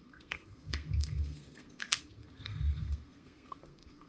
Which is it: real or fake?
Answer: fake